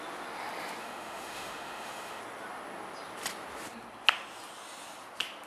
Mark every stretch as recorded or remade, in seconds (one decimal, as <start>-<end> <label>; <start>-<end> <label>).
0.0-0.8 recorded; 0.8-2.2 remade; 2.2-5.5 recorded